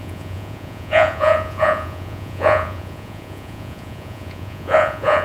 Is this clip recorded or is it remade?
remade